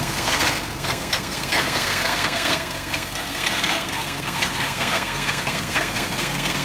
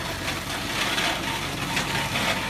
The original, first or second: second